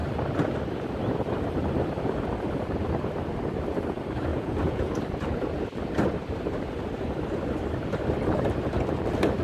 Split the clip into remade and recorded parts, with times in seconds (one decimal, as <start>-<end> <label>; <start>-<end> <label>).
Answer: 0.0-4.3 recorded; 4.3-4.9 remade; 4.9-9.4 recorded